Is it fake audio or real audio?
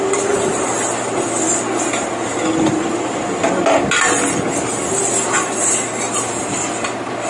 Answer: real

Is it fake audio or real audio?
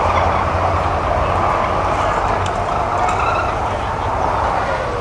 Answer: real